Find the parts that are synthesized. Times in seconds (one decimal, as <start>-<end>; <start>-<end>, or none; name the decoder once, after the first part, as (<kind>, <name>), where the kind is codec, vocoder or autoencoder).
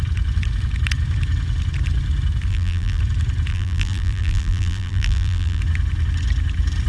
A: 2.5-3.0 (vocoder, BigVGAN v2); 3.5-5.6